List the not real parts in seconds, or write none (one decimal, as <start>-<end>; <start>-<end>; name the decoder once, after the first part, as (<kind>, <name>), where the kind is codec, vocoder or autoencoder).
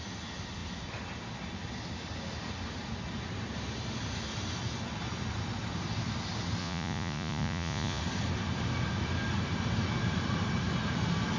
6.6-8.0 (vocoder, Vocos)